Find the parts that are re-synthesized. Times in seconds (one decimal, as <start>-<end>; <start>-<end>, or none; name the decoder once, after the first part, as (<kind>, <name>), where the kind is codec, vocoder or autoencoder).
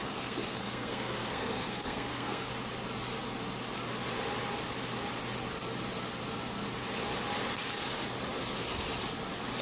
0.0-2.5 (codec, SNAC)